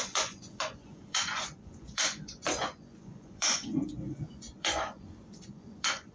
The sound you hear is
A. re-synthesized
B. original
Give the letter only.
A